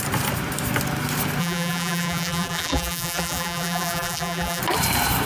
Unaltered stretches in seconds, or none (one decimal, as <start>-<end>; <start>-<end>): 0.0-1.4; 4.6-5.3